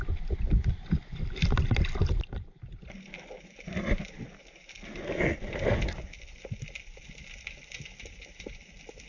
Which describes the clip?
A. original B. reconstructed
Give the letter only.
A